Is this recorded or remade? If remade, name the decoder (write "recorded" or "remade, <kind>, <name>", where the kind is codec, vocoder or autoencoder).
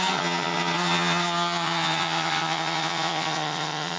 remade, vocoder, HiFi-GAN